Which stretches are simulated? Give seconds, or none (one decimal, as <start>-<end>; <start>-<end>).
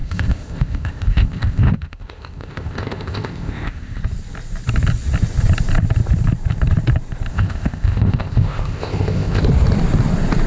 0.0-4.0; 7.3-9.4